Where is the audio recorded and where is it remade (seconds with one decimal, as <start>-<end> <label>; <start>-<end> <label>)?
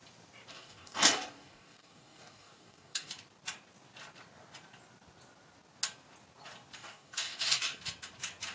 0.0-0.5 recorded; 0.5-3.1 remade; 3.1-6.8 recorded; 6.8-7.8 remade; 7.8-8.5 recorded